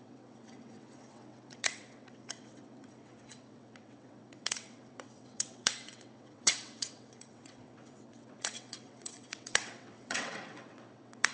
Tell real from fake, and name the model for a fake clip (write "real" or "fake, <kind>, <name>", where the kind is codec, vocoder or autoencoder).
fake, vocoder, WaveNeXt